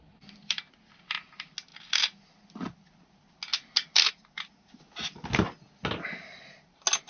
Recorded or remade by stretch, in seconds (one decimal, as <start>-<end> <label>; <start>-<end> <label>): 0.0-7.1 recorded